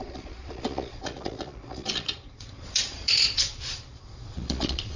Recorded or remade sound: remade